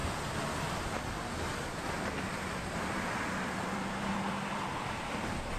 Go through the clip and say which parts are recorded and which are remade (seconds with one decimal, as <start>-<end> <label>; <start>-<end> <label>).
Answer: 0.0-2.7 recorded; 2.7-5.6 remade